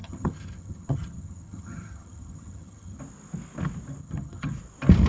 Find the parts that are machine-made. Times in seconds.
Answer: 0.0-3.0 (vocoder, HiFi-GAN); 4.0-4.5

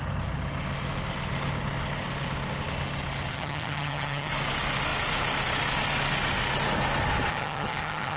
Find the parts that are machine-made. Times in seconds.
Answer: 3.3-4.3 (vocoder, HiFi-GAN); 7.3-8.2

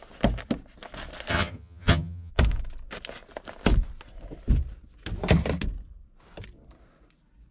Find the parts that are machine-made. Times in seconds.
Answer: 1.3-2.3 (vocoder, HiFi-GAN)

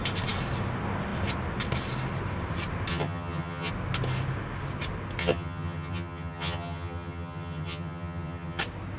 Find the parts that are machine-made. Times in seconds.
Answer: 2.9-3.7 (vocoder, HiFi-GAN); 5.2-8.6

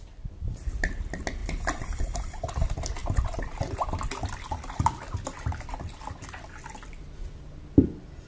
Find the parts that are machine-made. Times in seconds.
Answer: none

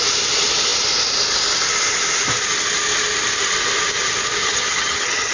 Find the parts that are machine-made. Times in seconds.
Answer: 4.4-5.3 (vocoder, HiFi-GAN)

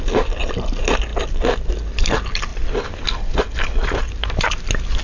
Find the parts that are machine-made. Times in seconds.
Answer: none

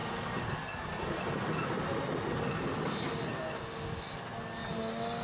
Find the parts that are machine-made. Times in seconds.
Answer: none